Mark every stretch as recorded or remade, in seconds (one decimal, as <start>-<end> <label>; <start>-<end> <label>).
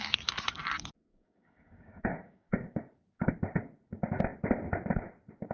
0.0-1.1 recorded; 1.1-3.3 remade; 3.3-5.5 recorded